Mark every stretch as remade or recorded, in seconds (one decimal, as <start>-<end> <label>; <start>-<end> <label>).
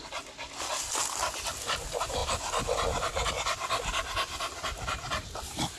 0.0-5.8 recorded